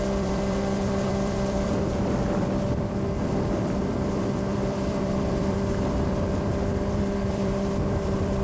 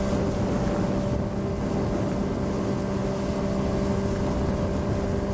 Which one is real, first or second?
second